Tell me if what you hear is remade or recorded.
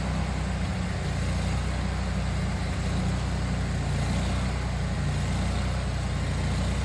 recorded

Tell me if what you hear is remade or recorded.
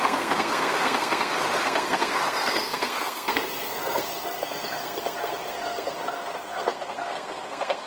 remade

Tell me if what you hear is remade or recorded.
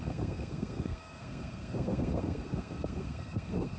remade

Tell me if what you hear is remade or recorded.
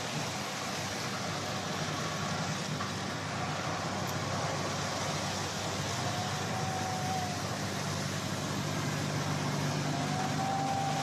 recorded